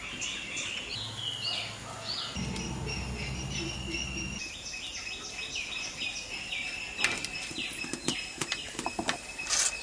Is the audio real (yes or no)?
yes